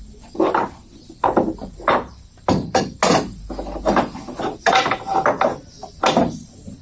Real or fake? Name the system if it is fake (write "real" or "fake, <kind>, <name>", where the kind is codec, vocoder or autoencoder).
real